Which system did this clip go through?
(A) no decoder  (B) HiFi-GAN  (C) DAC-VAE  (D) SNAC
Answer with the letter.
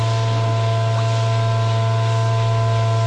A